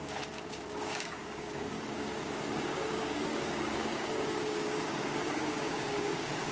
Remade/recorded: remade